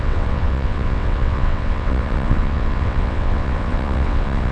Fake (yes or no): yes